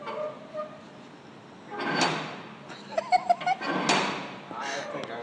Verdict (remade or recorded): recorded